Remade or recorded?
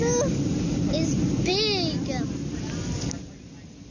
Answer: recorded